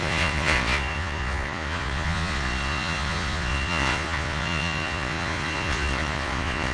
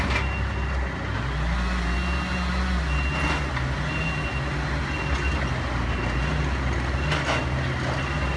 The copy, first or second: first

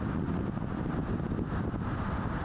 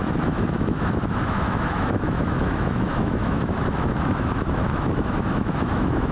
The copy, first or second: second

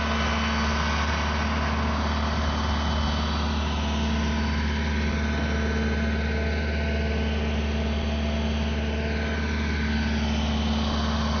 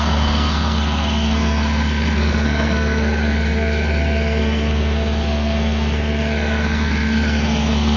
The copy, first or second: second